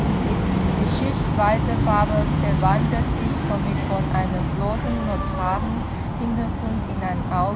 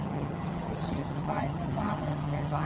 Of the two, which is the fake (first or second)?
second